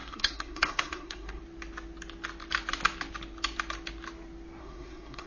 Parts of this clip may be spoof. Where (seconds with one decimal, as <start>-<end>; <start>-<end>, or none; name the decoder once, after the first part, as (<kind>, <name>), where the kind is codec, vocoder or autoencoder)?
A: 0.0-1.4 (codec, SNAC); 4.6-5.3